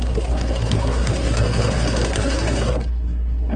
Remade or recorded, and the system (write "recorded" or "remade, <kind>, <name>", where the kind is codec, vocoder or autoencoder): remade, codec, SNAC